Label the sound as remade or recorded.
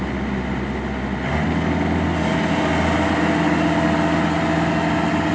recorded